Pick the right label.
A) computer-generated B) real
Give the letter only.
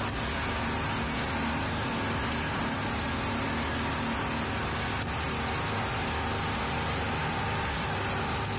B